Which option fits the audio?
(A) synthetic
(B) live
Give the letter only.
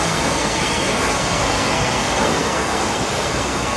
A